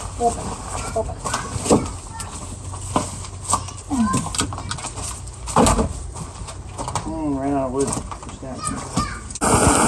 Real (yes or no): yes